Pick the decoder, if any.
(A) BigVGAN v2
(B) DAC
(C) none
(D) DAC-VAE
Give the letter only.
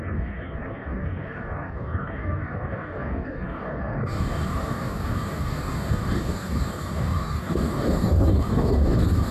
B